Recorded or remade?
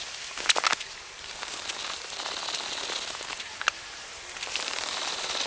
recorded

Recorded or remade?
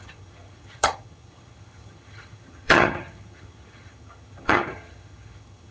remade